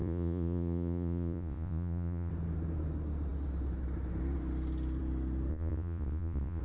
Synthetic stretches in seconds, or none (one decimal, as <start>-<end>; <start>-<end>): 0.0-2.3; 5.5-6.6